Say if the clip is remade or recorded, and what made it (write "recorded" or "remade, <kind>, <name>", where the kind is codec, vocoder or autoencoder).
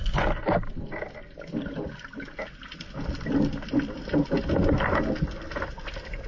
recorded